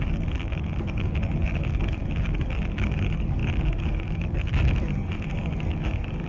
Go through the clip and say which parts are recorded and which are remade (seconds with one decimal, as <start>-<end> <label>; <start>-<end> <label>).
0.0-6.3 remade